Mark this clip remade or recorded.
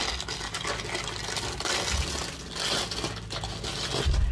recorded